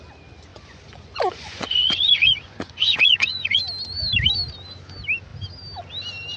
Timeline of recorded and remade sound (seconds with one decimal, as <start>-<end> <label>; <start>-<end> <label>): 0.0-0.5 recorded; 0.5-3.6 remade; 3.6-6.4 recorded